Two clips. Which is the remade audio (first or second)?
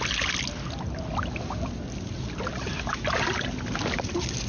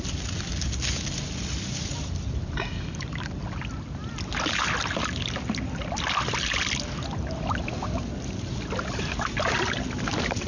second